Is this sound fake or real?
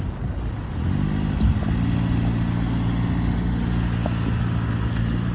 real